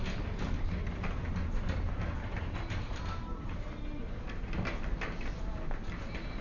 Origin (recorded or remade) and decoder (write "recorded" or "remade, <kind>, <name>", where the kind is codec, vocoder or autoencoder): recorded